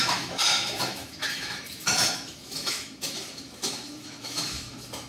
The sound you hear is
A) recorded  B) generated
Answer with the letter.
B